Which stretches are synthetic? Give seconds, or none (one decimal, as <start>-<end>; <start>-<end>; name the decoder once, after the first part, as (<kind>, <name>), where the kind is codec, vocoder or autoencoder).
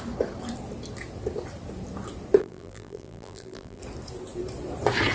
2.4-3.8 (vocoder, BigVGAN v2)